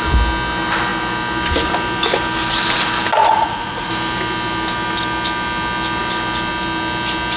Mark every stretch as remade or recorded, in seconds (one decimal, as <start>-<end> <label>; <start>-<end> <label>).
0.0-3.2 recorded; 3.2-3.9 remade; 3.9-7.4 recorded